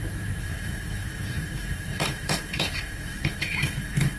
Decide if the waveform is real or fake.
fake